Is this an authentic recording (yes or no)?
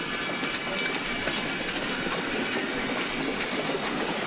yes